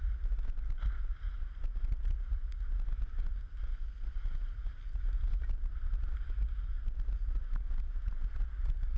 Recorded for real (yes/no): yes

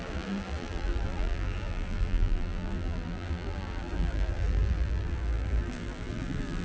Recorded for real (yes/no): no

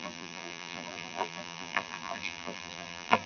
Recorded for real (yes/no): no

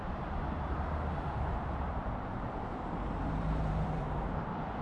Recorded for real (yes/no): no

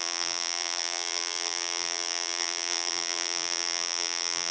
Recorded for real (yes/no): no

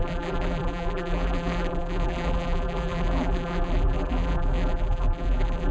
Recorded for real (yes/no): no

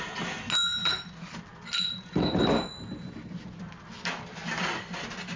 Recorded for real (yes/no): yes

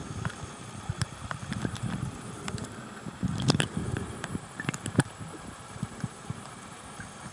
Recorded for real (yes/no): no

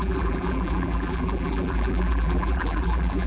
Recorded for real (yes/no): no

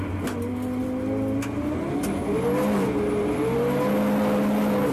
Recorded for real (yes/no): yes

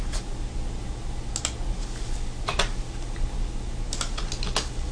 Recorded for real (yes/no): yes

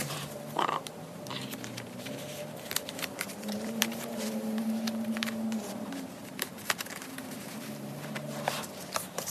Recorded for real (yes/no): no